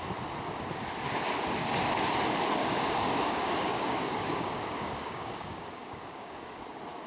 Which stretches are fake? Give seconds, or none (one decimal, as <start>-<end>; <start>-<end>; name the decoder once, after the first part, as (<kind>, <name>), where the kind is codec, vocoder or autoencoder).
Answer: 2.6-6.6 (codec, DAC)